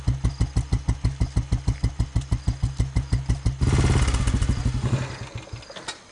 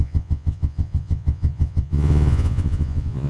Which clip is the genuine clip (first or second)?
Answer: first